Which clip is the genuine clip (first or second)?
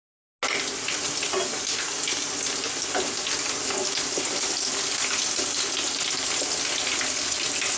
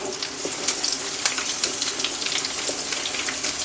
first